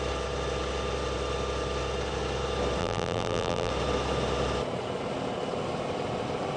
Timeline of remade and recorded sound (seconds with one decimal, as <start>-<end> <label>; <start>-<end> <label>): 0.0-2.8 recorded; 2.8-3.7 remade; 3.7-6.6 recorded